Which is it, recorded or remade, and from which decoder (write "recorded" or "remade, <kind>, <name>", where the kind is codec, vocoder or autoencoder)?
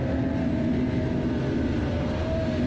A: recorded